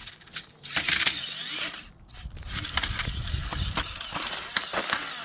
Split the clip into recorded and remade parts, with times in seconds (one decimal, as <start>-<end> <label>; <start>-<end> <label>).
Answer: 0.0-5.2 recorded